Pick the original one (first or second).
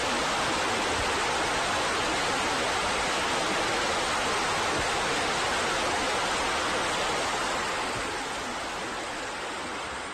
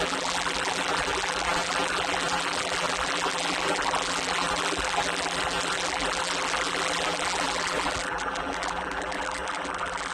first